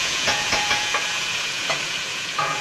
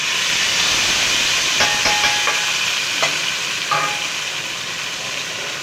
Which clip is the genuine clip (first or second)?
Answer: second